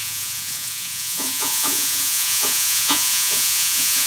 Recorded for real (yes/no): no